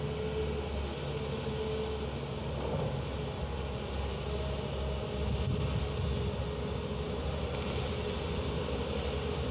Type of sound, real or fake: real